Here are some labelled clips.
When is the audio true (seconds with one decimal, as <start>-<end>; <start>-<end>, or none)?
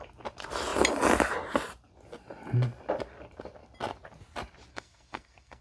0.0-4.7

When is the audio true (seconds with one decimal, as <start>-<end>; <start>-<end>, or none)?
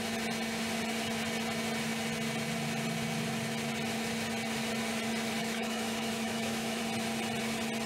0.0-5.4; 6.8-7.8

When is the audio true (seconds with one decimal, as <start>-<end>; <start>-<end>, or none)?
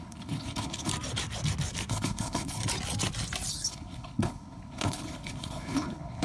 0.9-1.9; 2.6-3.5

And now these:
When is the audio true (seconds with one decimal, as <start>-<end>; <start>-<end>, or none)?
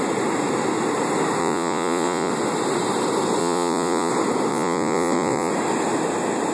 0.0-1.4; 2.3-3.4; 4.1-4.5; 5.5-6.5